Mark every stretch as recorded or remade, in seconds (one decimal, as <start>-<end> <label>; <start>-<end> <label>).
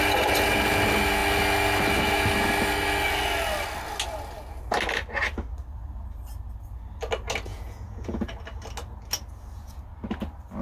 0.0-7.5 recorded; 7.5-8.2 remade; 8.2-10.6 recorded